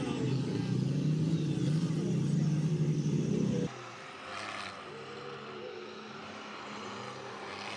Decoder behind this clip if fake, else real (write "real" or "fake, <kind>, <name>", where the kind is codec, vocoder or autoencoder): real